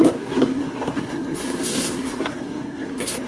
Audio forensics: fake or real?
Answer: fake